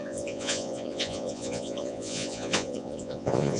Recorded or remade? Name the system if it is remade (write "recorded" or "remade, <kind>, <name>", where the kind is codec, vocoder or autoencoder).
remade, vocoder, Vocos